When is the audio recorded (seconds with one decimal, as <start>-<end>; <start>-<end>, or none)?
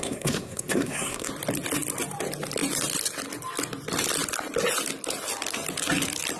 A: 1.3-6.4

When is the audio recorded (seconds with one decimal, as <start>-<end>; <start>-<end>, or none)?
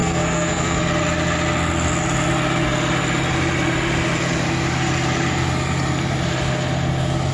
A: 0.8-7.3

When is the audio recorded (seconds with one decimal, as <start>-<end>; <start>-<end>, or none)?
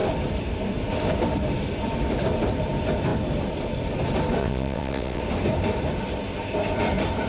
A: 0.0-4.4; 5.2-7.3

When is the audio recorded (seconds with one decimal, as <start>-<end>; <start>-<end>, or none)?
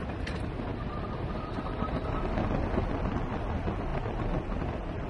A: 0.0-3.9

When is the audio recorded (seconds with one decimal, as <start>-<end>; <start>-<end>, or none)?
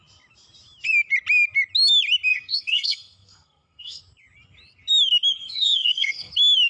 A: 0.0-2.3; 4.0-5.4; 6.3-6.7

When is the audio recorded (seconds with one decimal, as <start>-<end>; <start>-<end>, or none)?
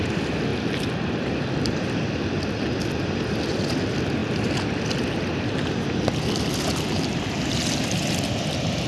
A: 0.0-8.9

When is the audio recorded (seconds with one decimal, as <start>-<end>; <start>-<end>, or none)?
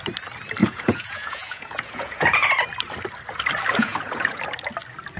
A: 0.0-0.6; 2.5-3.8; 4.4-5.2